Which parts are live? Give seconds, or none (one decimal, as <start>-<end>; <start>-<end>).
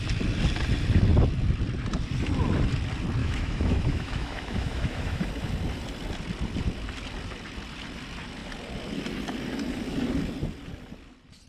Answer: 0.0-3.2; 5.3-11.5